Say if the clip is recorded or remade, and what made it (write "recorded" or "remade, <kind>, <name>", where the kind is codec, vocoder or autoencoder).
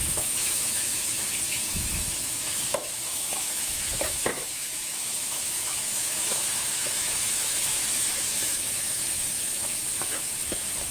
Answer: remade, autoencoder, DAC-VAE